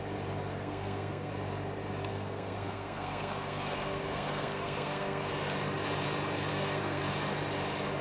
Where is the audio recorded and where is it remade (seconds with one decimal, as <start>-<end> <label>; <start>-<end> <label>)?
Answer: 0.0-0.5 recorded; 0.5-1.3 remade; 1.3-2.1 recorded; 2.1-5.3 remade; 5.3-6.5 recorded; 6.5-7.0 remade; 7.0-8.0 recorded

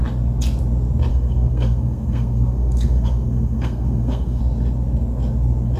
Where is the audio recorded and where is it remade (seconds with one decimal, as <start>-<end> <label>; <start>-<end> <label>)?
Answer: 0.0-1.1 recorded; 1.1-4.4 remade; 4.4-5.8 recorded

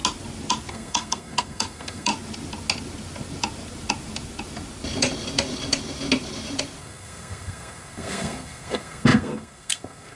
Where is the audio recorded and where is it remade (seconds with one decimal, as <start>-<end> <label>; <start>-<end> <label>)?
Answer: 0.0-0.7 recorded; 0.7-2.1 remade; 2.1-6.8 recorded; 6.8-10.2 remade

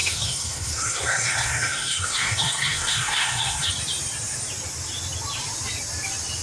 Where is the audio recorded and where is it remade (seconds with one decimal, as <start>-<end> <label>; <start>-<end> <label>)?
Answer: 0.0-3.7 remade; 3.7-6.4 recorded

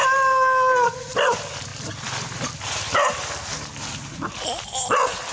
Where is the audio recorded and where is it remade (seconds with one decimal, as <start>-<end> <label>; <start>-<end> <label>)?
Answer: 0.0-5.3 recorded

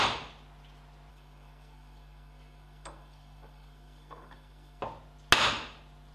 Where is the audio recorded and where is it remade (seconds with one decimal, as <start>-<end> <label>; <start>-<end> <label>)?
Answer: 0.0-1.1 recorded; 1.1-4.8 remade; 4.8-6.1 recorded